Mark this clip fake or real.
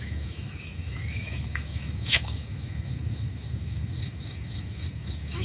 fake